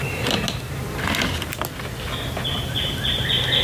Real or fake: real